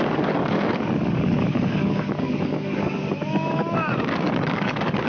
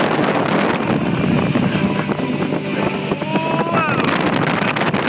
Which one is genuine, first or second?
second